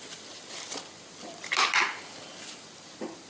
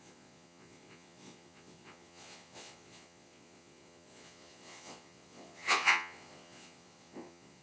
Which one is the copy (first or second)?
second